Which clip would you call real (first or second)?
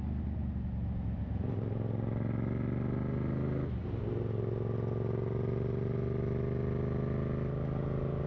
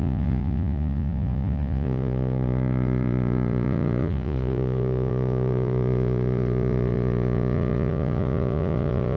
first